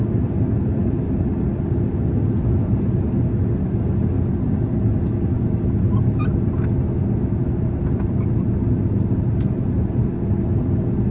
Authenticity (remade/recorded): recorded